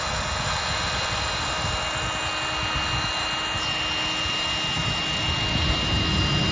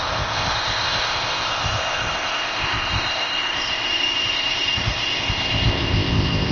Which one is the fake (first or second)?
second